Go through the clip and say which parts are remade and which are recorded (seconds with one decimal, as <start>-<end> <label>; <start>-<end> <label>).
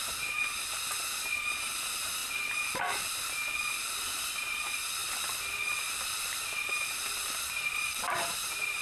0.0-2.2 recorded; 2.2-4.2 remade; 4.2-5.0 recorded; 5.0-8.4 remade; 8.4-8.8 recorded